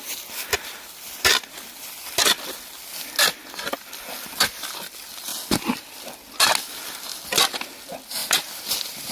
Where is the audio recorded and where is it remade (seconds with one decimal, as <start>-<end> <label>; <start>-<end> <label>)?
0.0-9.1 recorded